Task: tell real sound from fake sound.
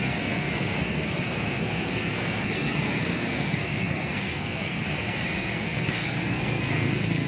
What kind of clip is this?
fake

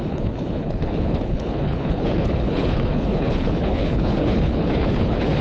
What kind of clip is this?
fake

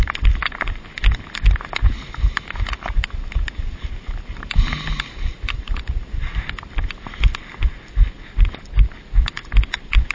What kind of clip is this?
real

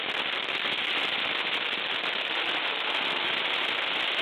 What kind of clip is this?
real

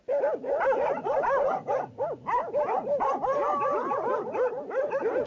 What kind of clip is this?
real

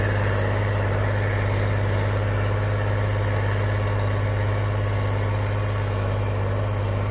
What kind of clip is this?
real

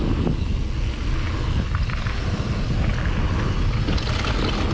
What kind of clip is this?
real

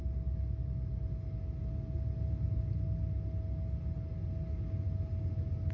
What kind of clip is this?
real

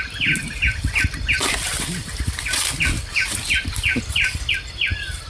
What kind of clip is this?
real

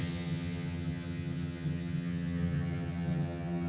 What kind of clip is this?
fake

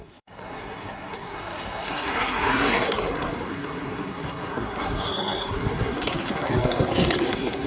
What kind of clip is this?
fake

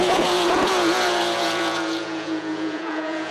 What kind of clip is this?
fake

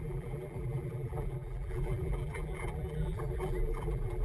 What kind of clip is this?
fake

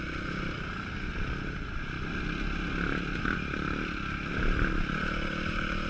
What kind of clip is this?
real